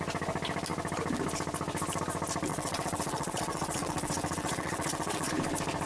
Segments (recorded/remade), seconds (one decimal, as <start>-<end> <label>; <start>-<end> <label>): 0.0-2.5 recorded; 2.5-5.3 remade; 5.3-5.9 recorded